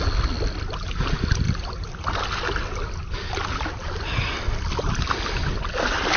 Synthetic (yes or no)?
no